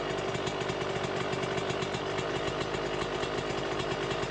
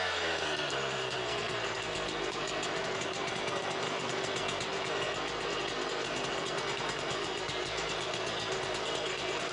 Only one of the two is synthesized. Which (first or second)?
second